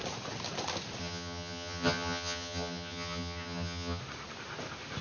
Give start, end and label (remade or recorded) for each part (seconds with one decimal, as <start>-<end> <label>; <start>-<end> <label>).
0.0-1.0 recorded; 1.0-4.0 remade; 4.0-5.0 recorded